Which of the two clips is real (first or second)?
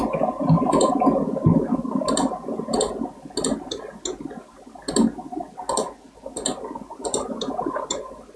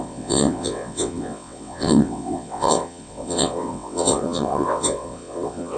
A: first